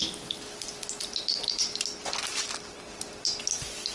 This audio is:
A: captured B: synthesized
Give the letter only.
A